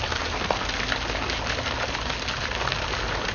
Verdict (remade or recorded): recorded